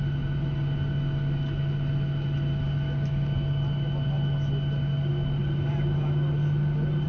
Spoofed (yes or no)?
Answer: no